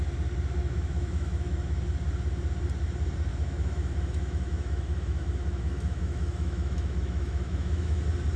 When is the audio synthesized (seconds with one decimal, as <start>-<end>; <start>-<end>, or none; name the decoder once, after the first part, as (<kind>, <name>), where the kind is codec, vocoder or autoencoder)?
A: 0.6-1.8 (autoencoder, DAC-VAE); 3.3-8.0